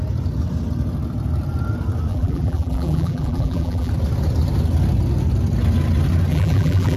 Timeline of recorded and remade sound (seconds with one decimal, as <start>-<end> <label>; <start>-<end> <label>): 0.0-2.1 recorded; 2.1-3.9 remade; 3.9-6.3 recorded; 6.3-7.0 remade